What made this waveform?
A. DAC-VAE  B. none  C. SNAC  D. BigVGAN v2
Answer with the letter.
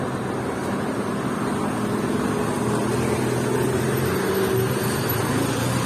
B